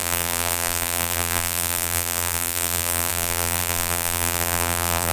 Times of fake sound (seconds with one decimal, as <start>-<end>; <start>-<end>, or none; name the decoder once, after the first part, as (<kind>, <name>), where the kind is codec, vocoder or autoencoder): 0.0-5.1 (vocoder, BigVGAN v2)